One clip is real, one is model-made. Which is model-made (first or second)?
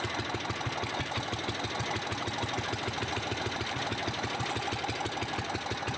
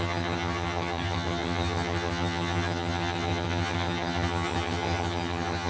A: second